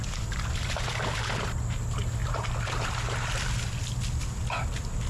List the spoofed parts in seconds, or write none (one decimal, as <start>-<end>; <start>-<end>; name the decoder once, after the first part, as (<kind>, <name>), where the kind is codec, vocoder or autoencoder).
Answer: none